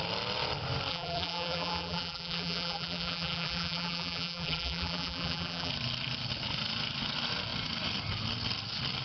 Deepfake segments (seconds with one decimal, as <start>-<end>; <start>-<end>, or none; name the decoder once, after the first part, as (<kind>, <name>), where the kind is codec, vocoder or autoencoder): 0.9-5.7 (vocoder, BigVGAN v2)